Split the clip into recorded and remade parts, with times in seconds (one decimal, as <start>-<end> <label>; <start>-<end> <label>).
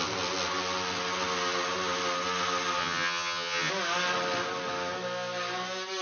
0.0-2.8 recorded; 2.8-3.7 remade; 3.7-6.0 recorded